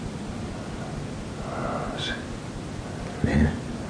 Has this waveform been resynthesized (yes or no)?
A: no